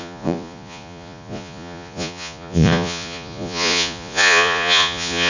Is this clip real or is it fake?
fake